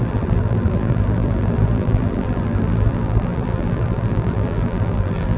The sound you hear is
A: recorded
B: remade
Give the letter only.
B